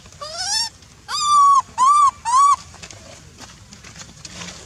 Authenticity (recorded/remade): recorded